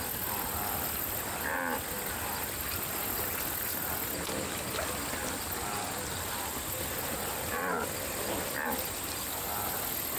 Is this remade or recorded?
recorded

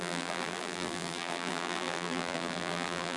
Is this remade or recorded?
remade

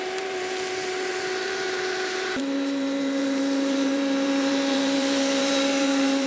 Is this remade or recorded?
remade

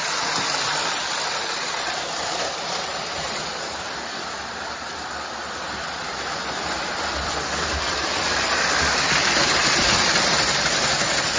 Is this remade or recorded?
remade